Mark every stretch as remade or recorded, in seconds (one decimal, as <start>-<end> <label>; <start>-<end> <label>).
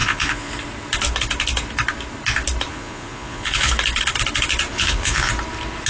0.0-0.5 remade; 0.5-2.7 recorded; 2.7-3.7 remade; 3.7-4.7 recorded; 4.7-5.3 remade; 5.3-5.9 recorded